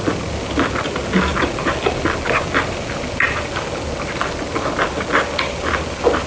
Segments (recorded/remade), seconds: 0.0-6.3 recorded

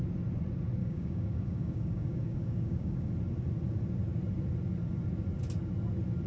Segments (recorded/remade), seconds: 0.0-0.8 recorded; 0.8-3.1 remade; 3.1-6.3 recorded

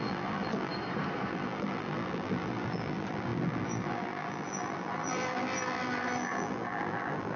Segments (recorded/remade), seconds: 0.0-0.7 remade; 0.7-1.3 recorded; 1.3-7.4 remade

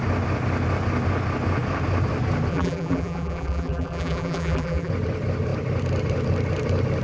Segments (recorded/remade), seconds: 0.0-2.5 recorded; 2.5-4.9 remade; 4.9-7.0 recorded

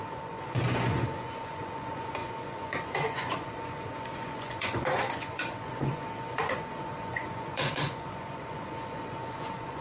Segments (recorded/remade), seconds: 0.0-9.8 remade

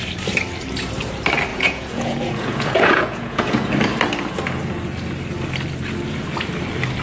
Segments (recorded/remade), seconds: 0.0-1.5 recorded; 1.5-3.7 remade; 3.7-7.0 recorded